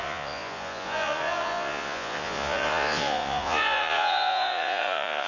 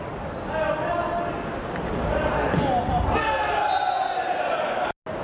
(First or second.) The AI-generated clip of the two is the first